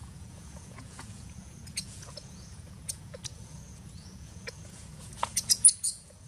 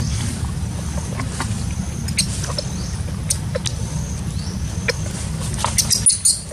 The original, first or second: second